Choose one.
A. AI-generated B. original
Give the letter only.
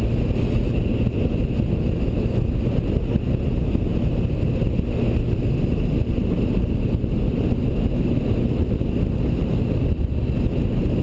B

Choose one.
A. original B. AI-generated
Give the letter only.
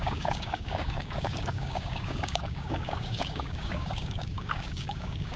B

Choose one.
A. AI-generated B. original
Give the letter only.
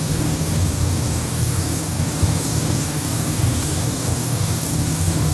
A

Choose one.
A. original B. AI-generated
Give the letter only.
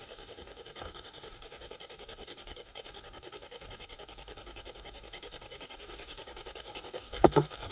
B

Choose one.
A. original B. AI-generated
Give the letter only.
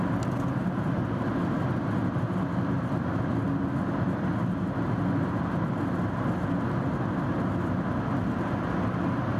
A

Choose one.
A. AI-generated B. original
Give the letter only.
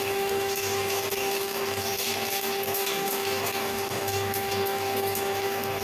A